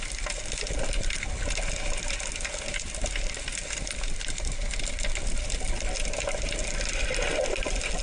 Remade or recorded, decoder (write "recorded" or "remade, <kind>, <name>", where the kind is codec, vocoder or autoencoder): recorded